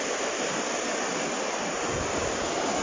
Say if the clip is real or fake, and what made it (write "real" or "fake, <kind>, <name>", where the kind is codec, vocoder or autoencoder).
real